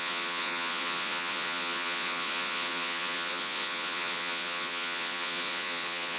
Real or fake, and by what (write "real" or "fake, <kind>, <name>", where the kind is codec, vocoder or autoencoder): fake, vocoder, Vocos